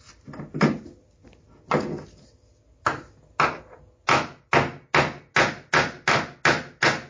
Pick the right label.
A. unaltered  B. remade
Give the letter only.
A